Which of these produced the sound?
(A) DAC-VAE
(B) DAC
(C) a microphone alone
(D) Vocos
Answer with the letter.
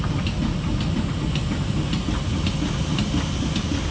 C